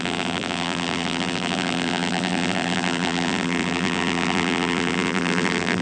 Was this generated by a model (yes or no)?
yes